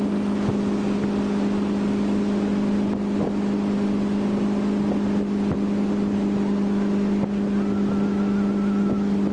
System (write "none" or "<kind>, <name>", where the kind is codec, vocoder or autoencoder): none